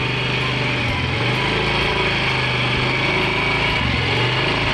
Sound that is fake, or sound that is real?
real